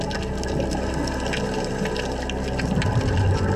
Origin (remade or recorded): recorded